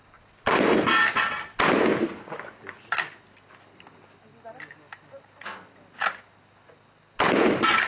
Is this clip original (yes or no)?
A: yes